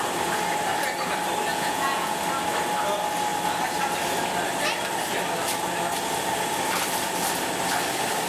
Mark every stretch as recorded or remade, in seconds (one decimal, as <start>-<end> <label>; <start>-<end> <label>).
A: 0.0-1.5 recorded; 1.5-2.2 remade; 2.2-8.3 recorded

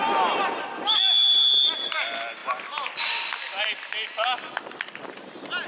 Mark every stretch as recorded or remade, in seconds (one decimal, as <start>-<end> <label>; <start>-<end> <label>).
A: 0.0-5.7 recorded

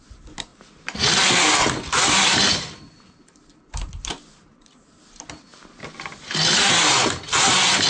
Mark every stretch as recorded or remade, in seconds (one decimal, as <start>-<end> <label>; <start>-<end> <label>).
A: 0.0-7.9 recorded

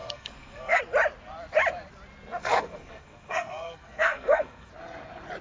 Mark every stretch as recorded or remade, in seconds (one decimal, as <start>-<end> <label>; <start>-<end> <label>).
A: 0.0-0.8 remade; 0.8-2.4 recorded; 2.4-4.7 remade; 4.7-5.4 recorded

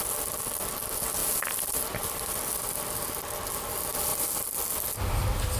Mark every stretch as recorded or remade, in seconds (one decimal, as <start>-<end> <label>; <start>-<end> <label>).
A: 0.0-5.6 recorded

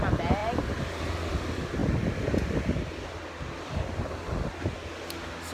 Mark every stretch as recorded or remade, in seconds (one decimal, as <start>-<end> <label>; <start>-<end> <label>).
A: 0.0-5.5 recorded

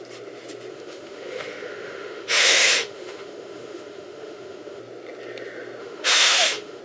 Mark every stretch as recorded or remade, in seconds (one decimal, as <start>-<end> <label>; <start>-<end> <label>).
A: 0.0-0.7 recorded; 0.7-4.8 remade; 4.8-5.8 recorded; 5.8-6.8 remade

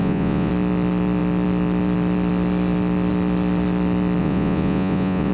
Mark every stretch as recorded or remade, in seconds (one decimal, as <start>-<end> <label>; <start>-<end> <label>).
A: 0.0-0.5 remade; 0.5-4.2 recorded; 4.2-5.3 remade